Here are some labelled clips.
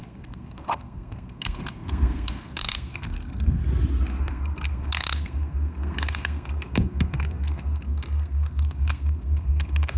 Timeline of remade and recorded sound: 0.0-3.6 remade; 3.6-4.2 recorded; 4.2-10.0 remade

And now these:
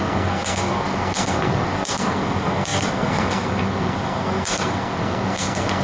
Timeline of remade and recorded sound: 0.0-5.8 remade

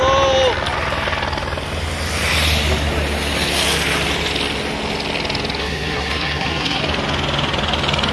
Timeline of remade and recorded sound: 0.0-5.6 recorded; 5.6-6.8 remade; 6.8-8.1 recorded

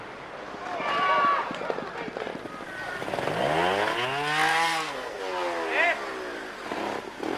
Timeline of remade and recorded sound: 0.0-4.5 recorded; 4.5-5.2 remade; 5.2-7.4 recorded